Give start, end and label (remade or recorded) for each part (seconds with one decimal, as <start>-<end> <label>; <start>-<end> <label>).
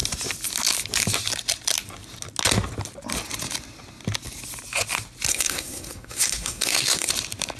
0.0-5.3 recorded; 5.3-7.1 remade; 7.1-7.6 recorded